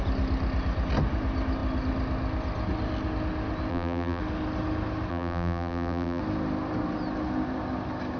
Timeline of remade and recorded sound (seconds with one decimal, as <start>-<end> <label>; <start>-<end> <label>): 0.0-3.7 recorded; 3.7-4.2 remade; 4.2-5.1 recorded; 5.1-6.2 remade; 6.2-8.2 recorded